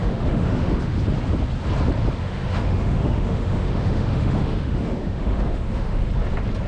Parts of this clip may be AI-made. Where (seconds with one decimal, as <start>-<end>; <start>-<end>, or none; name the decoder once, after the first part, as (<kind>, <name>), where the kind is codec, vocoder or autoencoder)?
0.0-1.0 (autoencoder, DAC-VAE); 2.2-6.1